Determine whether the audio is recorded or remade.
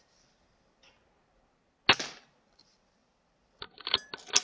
recorded